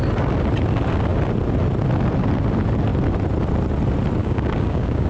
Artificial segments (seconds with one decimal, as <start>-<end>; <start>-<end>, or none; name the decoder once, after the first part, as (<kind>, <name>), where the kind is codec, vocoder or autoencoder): 4.2-5.1 (codec, DAC)